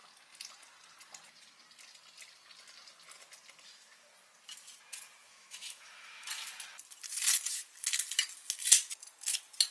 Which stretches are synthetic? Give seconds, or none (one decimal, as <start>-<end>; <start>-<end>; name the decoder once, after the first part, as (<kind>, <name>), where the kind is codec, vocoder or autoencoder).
5.2-6.3 (autoencoder, DAC-VAE)

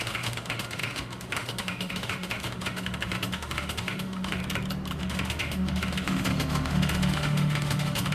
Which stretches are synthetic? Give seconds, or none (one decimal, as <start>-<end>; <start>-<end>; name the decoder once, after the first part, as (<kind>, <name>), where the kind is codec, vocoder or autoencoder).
0.0-4.4 (autoencoder, DAC-VAE); 5.0-8.1